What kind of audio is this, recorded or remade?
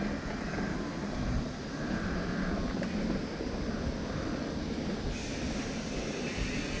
recorded